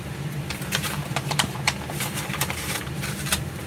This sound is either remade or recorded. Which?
remade